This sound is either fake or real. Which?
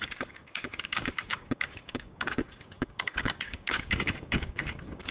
fake